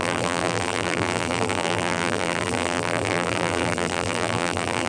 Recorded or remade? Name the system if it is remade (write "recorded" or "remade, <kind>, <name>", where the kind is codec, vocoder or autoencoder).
remade, vocoder, BigVGAN v2